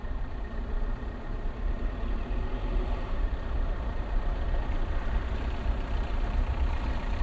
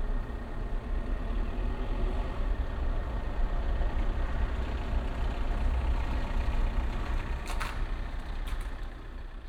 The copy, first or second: first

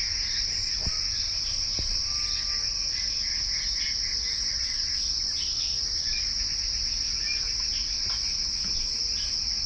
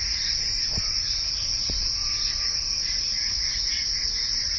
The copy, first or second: second